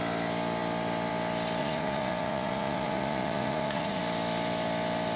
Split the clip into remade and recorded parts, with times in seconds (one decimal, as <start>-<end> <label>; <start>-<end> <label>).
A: 0.0-1.6 recorded; 1.6-4.0 remade; 4.0-5.2 recorded